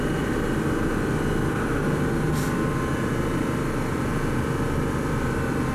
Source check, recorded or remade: recorded